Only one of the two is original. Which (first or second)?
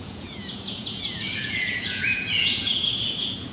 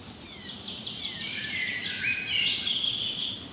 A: second